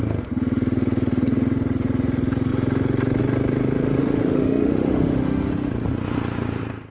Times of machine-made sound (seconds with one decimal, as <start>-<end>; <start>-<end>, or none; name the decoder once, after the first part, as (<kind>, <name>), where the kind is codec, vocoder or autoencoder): 4.0-5.5 (autoencoder, DAC-VAE)